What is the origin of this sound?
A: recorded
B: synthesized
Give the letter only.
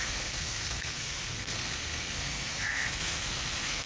B